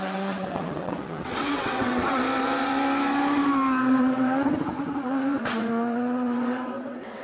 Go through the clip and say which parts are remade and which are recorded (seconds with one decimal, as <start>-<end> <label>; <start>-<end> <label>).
0.0-2.2 remade; 2.2-3.8 recorded; 3.8-7.2 remade